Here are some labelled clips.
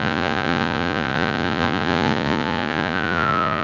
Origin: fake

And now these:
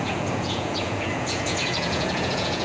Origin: fake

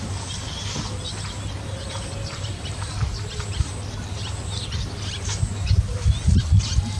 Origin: real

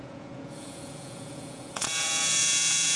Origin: fake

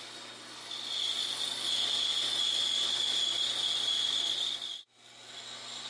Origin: real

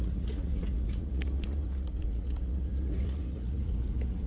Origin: fake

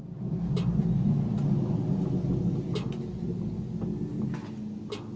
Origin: real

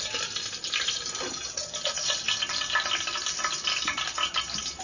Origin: real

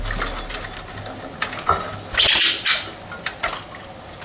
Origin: real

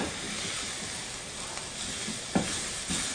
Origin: real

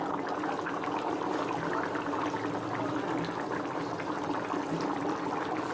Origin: real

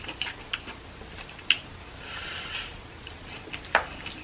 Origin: real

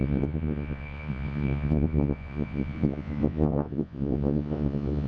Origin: fake